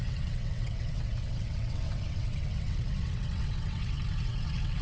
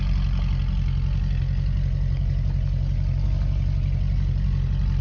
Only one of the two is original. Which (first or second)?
second